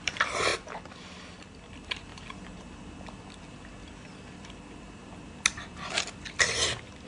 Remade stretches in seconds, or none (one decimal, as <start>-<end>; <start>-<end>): 0.0-2.1; 6.4-7.1